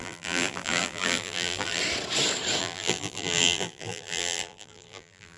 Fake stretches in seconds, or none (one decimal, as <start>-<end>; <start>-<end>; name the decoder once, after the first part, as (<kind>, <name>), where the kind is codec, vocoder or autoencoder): 0.0-1.8 (vocoder, BigVGAN v2); 2.6-5.4